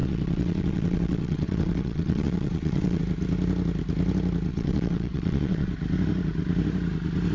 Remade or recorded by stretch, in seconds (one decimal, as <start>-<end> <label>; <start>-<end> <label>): 0.0-3.0 remade; 3.0-4.5 recorded; 4.5-5.7 remade; 5.7-7.3 recorded